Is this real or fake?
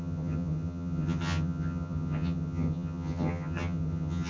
fake